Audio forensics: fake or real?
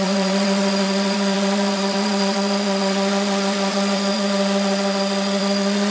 fake